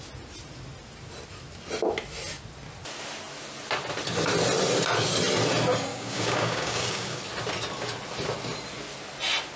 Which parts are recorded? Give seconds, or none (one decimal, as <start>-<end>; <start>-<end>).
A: 0.0-5.9; 7.2-9.6